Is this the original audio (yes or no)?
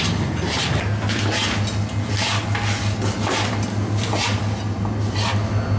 yes